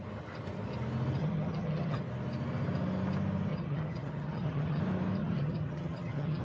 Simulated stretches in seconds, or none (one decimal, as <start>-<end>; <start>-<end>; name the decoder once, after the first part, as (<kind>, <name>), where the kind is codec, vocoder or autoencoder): 1.2-2.0 (vocoder, HiFi-GAN); 3.5-4.8; 5.2-6.4